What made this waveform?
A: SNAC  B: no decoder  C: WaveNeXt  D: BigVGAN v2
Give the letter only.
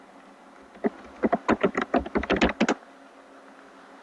B